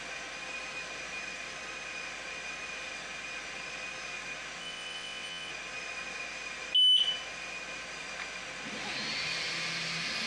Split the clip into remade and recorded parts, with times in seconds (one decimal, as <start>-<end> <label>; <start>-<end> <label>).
0.0-4.6 recorded; 4.6-5.5 remade; 5.5-10.3 recorded